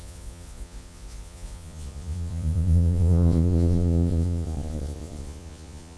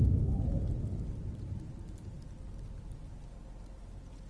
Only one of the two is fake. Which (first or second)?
first